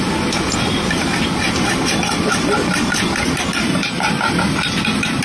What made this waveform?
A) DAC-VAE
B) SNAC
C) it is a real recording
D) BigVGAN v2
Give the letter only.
C